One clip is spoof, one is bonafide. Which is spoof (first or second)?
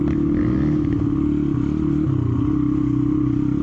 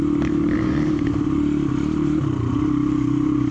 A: second